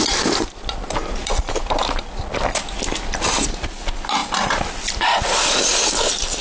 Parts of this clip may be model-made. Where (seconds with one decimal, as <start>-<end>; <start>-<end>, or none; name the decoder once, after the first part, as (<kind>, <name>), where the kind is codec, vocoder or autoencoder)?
none